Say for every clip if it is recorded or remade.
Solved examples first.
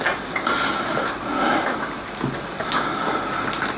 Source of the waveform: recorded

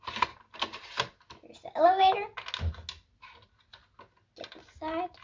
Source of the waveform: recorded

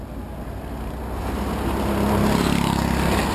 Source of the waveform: recorded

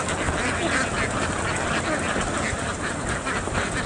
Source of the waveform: recorded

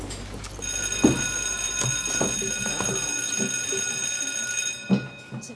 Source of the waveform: recorded